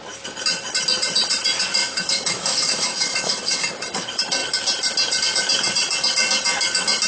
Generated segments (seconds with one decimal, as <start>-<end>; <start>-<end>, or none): 1.8-3.6